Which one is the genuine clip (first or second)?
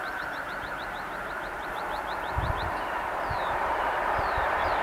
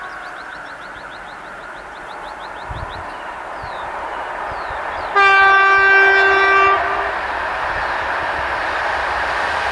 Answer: second